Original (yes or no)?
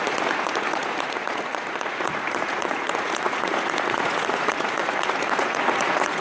no